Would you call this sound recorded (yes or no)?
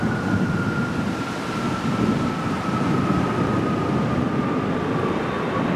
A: yes